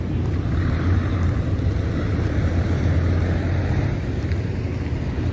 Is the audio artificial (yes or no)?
no